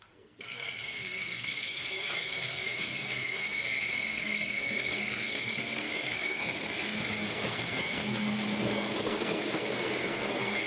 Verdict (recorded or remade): remade